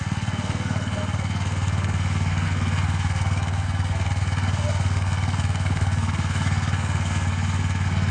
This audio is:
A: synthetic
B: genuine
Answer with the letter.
A